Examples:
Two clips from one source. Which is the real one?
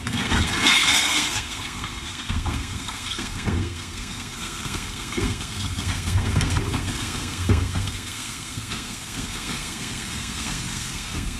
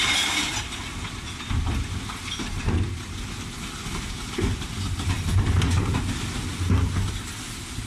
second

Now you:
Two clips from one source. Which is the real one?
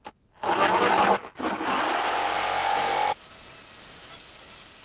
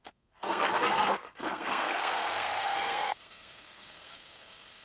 first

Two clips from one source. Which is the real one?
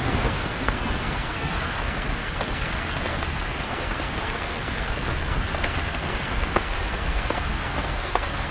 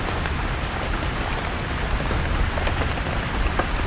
second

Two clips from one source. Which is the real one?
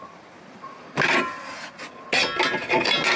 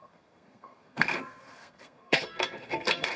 first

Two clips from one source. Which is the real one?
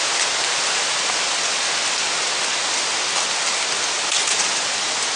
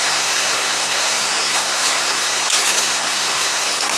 first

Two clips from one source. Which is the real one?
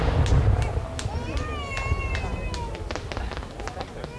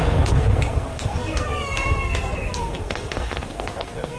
first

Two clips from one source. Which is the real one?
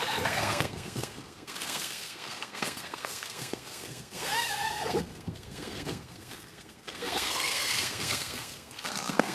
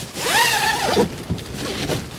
second